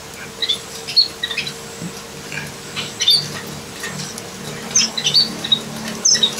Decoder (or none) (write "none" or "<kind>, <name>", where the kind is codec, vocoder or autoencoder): none